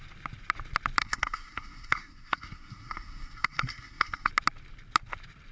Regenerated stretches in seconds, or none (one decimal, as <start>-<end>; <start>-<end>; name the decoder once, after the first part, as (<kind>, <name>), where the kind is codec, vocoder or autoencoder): 1.0-4.3 (codec, SNAC)